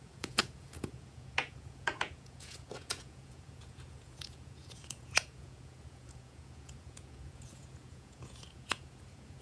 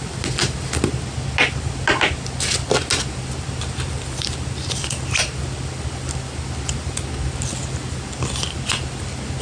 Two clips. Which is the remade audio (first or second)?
first